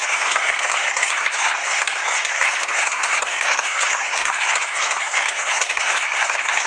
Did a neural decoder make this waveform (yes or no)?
yes